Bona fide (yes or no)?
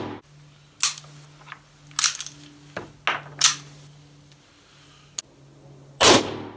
yes